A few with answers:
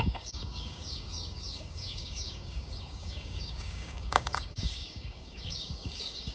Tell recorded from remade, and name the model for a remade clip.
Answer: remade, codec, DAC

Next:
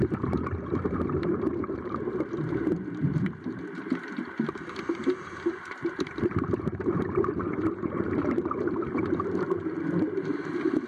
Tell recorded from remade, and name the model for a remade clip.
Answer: remade, vocoder, BigVGAN v2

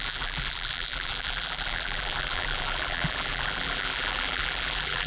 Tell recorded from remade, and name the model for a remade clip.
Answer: remade, vocoder, BigVGAN v2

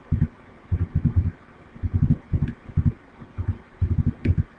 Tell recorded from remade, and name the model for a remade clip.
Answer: recorded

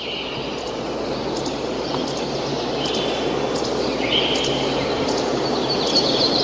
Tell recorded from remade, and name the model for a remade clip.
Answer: recorded